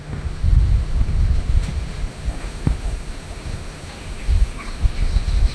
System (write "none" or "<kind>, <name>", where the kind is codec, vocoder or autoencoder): autoencoder, DAC-VAE